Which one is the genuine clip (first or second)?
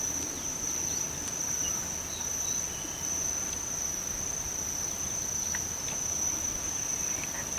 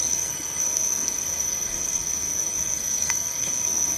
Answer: first